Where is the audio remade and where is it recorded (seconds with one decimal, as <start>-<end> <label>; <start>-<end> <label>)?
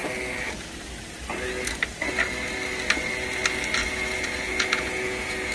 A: 0.0-3.8 recorded; 3.8-5.5 remade